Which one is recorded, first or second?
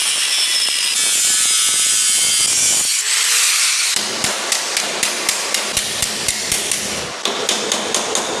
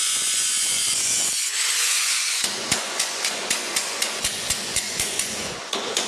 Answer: first